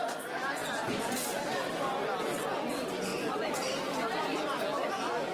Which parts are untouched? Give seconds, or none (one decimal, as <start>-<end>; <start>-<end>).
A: 0.0-0.6; 1.7-3.1; 4.6-5.3